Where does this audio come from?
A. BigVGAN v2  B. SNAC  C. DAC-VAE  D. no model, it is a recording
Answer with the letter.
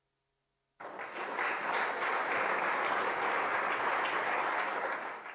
D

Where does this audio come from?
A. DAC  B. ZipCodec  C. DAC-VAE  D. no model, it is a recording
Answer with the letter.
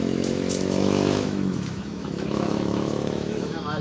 C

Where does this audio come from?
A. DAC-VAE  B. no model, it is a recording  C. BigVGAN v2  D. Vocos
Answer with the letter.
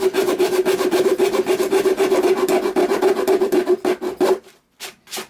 B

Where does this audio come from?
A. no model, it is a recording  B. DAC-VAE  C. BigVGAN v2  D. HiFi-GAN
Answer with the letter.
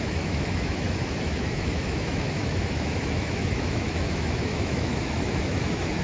B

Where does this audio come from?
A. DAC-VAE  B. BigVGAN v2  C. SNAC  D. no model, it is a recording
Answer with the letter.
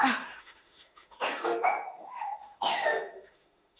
A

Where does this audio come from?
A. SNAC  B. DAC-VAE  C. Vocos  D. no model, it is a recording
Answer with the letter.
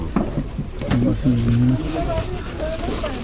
D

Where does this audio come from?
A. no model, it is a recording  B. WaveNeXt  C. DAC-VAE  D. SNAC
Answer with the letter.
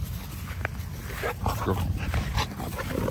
A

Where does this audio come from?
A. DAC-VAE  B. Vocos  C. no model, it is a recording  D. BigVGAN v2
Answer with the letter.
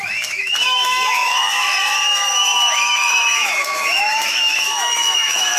A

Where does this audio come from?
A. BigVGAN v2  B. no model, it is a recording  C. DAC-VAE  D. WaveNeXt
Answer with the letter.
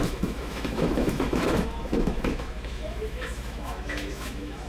C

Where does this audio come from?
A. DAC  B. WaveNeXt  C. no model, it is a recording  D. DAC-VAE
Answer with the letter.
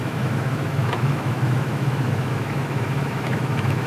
D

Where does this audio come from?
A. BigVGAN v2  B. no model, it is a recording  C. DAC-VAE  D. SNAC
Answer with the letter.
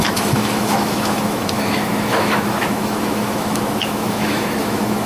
C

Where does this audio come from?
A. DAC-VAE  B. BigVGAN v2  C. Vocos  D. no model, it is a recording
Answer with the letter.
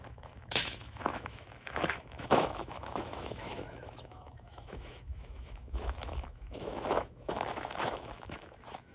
A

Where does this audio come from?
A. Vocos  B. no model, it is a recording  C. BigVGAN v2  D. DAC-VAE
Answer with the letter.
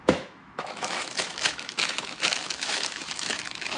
D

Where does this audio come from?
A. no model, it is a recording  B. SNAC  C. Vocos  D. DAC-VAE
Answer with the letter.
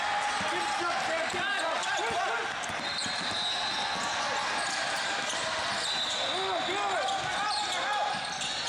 A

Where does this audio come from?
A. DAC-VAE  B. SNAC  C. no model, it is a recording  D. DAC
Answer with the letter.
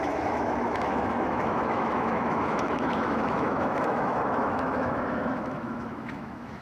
A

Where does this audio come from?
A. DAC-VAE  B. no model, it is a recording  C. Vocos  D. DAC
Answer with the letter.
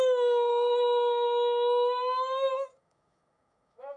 A